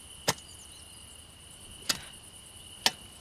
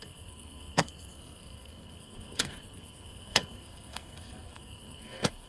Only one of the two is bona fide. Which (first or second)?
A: first